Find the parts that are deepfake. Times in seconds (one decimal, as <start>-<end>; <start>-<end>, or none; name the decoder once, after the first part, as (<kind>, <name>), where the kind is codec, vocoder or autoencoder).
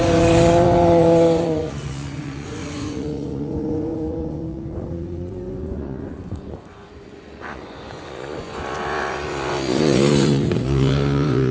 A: 0.0-11.5 (vocoder, Vocos)